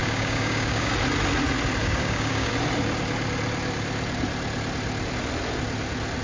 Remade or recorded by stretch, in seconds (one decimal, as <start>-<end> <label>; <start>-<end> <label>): 0.0-0.9 remade; 0.9-1.8 recorded; 1.8-2.5 remade; 2.5-6.2 recorded